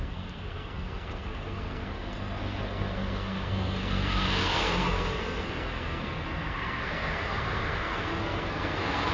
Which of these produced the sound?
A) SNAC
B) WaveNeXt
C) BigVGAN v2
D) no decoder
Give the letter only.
A